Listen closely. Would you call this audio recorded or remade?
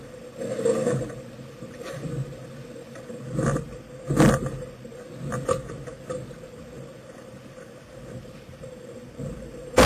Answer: recorded